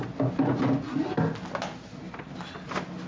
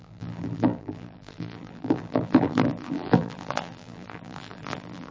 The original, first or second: first